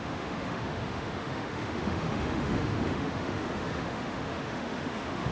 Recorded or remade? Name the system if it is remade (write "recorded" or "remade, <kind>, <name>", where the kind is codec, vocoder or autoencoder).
remade, autoencoder, DAC-VAE